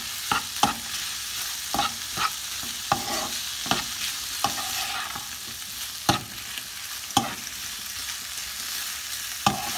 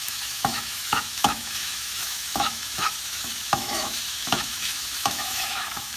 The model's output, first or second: second